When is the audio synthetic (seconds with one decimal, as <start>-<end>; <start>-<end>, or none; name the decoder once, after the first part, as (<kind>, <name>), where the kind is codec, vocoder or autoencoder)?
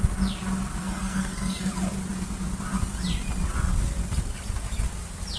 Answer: 0.8-1.7 (codec, SNAC)